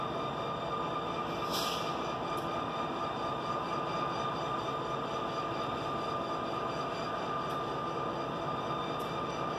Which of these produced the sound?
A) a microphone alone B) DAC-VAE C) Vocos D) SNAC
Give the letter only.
A